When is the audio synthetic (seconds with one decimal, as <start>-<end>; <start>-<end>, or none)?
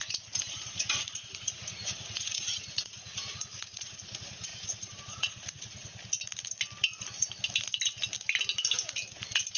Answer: 0.0-5.9; 9.1-9.6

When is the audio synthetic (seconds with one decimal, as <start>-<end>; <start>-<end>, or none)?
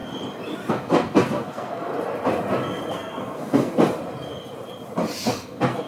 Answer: 0.7-1.9; 2.9-3.7; 5.3-5.9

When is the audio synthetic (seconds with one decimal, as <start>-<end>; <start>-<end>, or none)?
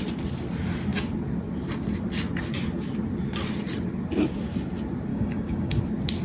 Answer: 5.1-5.8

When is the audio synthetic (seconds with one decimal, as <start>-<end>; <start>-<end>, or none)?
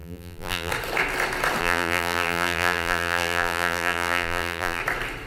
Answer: 0.0-0.7; 1.6-4.8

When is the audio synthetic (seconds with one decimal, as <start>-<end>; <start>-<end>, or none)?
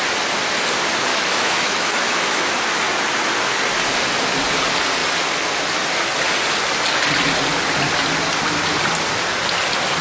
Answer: 1.1-2.5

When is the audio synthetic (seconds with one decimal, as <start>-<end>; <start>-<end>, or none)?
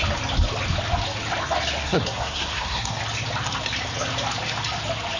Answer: 1.8-3.0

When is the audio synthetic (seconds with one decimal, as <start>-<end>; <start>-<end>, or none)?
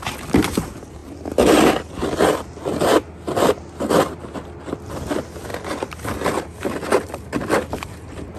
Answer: none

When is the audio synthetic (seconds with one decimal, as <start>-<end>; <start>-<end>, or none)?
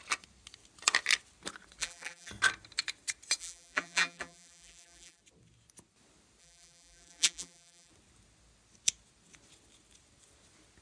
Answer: 1.8-2.3; 3.4-5.2; 6.4-7.9